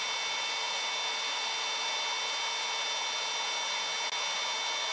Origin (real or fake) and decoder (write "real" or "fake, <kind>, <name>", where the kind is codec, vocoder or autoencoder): real